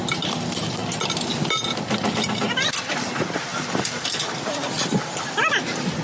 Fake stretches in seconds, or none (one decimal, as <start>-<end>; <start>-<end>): 0.0-0.8; 1.8-6.0